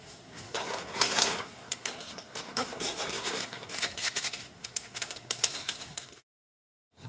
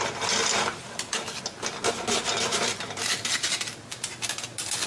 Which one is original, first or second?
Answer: second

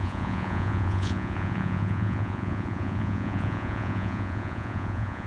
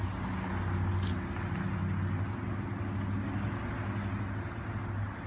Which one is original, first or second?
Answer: second